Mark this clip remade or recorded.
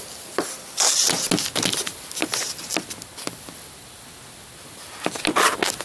recorded